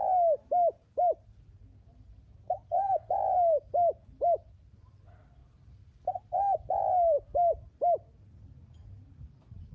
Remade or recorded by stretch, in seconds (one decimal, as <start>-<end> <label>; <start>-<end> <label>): 0.0-1.6 recorded; 1.6-3.1 remade; 3.1-9.7 recorded

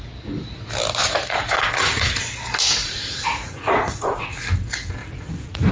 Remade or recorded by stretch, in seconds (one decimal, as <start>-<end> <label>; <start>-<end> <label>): 0.0-1.0 recorded; 1.0-2.1 remade; 2.1-2.8 recorded; 2.8-4.4 remade; 4.4-5.0 recorded; 5.0-5.7 remade

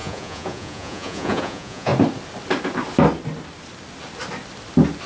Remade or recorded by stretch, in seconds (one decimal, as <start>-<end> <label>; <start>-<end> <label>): 0.0-1.9 remade; 1.9-5.1 recorded

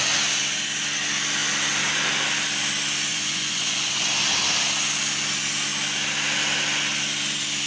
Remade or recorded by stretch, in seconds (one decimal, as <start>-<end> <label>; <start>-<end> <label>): 0.0-3.1 recorded; 3.1-4.1 remade; 4.1-7.7 recorded

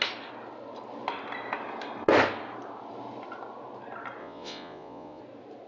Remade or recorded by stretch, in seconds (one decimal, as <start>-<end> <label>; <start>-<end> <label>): 0.0-4.2 recorded; 4.2-5.2 remade; 5.2-5.7 recorded

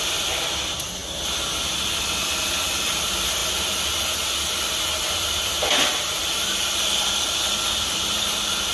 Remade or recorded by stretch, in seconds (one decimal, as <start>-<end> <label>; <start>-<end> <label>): 0.0-8.7 recorded

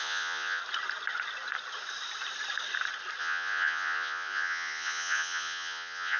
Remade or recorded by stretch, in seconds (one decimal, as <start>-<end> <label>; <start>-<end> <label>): 0.0-0.6 remade; 0.6-3.2 recorded; 3.2-6.2 remade